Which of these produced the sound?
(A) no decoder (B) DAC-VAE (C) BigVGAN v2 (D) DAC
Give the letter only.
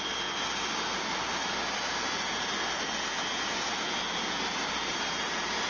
A